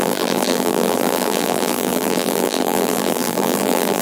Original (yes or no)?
no